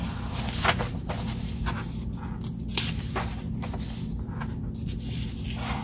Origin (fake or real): real